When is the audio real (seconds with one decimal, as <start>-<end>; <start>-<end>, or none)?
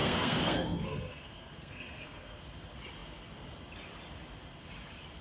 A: 2.4-5.2